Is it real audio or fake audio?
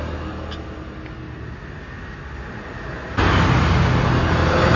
real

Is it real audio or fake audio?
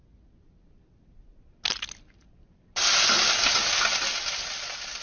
real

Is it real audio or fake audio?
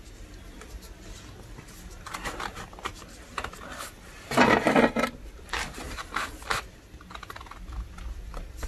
real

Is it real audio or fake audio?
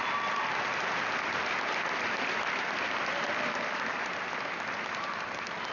real